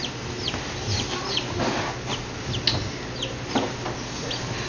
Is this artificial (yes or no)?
no